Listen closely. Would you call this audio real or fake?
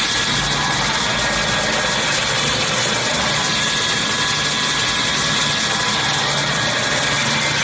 real